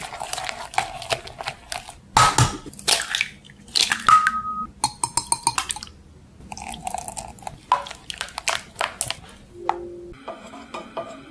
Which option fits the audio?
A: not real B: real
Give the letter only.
B